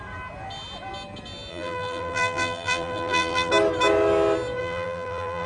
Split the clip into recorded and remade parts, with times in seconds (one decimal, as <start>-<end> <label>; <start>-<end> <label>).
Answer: 0.0-1.5 recorded; 1.5-3.5 remade; 3.5-4.6 recorded; 4.6-5.5 remade